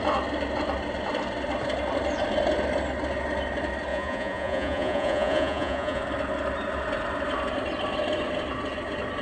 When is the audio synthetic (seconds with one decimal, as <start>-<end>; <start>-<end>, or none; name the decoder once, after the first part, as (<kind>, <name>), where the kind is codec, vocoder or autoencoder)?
3.9-6.0 (vocoder, Vocos)